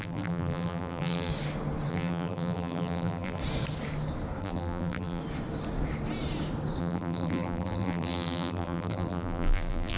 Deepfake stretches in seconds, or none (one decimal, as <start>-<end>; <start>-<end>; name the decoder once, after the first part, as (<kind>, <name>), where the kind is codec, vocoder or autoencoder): 0.0-1.3 (vocoder, BigVGAN v2); 1.9-3.4; 4.4-5.2; 6.8-10.0